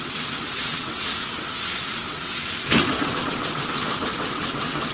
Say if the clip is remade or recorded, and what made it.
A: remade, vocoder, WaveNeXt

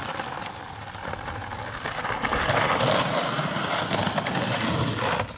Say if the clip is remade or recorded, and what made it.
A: recorded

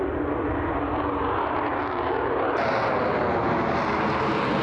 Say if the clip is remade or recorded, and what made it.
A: recorded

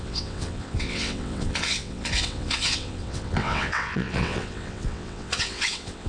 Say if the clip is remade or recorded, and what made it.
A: remade, vocoder, WaveNeXt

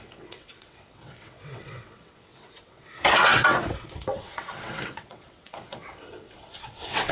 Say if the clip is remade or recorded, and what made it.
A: remade, vocoder, WaveNeXt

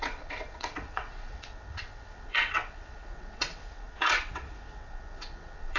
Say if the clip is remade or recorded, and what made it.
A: remade, vocoder, WaveNeXt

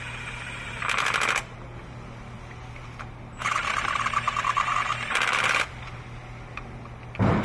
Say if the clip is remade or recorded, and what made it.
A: recorded